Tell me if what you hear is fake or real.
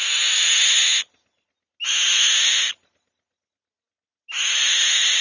real